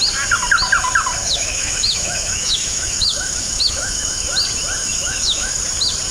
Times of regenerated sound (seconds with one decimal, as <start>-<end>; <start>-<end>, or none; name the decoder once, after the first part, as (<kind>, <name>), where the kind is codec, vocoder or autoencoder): 1.2-4.3 (autoencoder, DAC-VAE); 4.8-5.6